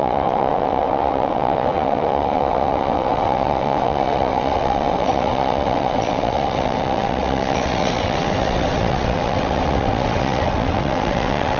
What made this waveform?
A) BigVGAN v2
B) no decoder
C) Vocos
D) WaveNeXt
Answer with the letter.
D